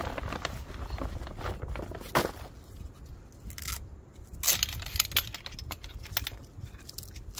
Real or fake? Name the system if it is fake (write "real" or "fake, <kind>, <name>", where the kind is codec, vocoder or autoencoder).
real